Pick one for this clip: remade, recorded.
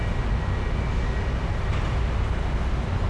recorded